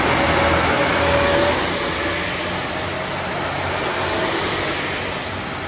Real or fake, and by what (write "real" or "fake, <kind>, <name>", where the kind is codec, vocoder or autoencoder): real